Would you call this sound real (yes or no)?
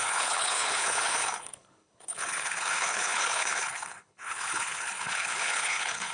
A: no